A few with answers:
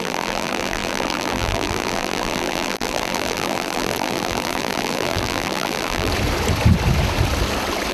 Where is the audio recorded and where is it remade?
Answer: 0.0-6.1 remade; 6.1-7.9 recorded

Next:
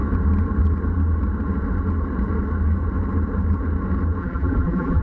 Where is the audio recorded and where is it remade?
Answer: 0.0-4.2 recorded; 4.2-5.0 remade

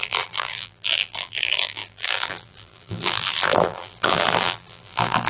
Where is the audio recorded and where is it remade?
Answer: 0.0-5.3 remade

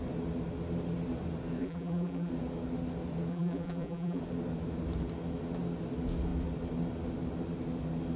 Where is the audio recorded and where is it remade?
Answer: 0.0-1.6 recorded; 1.6-2.3 remade; 2.3-3.3 recorded; 3.3-4.2 remade; 4.2-8.2 recorded

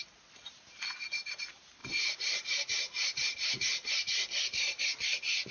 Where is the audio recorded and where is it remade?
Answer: 0.0-1.8 recorded; 1.8-4.8 remade; 4.8-5.5 recorded

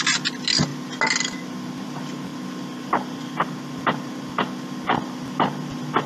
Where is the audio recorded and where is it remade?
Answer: 0.0-6.1 recorded